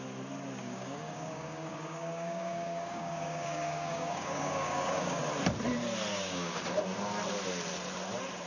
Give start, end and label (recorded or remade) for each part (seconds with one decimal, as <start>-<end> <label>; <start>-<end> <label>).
0.0-0.6 recorded; 0.6-5.2 remade; 5.2-6.1 recorded; 6.1-6.6 remade; 6.6-8.5 recorded